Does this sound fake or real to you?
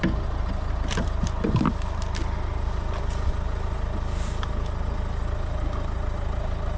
real